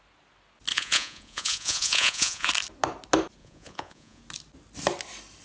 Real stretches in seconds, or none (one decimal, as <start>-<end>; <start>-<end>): 0.0-0.7; 2.5-3.4; 4.2-5.4